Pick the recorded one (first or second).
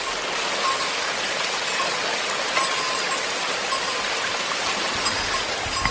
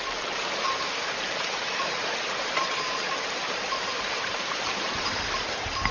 first